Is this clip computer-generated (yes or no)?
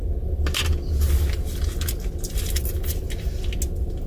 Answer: no